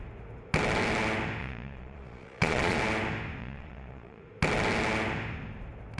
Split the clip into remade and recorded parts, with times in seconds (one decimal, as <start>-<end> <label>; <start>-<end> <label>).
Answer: 0.0-1.4 recorded; 1.4-2.8 remade; 2.8-3.4 recorded; 3.4-4.2 remade; 4.2-6.0 recorded